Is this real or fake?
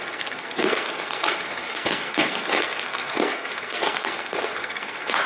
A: fake